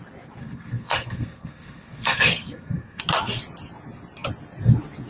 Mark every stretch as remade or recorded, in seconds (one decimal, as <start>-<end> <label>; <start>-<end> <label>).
0.0-0.4 recorded; 0.4-3.0 remade; 3.0-5.1 recorded